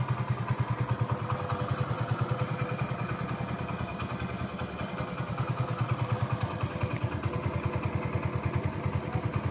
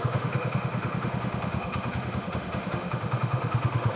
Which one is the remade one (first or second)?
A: second